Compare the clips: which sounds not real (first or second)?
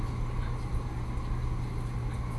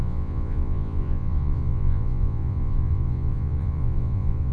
second